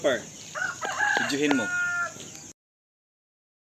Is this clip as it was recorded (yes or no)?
yes